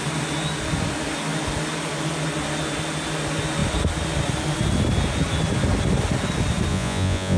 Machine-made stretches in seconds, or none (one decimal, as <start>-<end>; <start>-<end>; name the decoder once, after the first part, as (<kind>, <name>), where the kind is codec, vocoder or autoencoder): 6.7-7.4 (vocoder, Vocos)